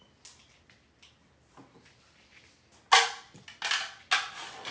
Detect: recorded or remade recorded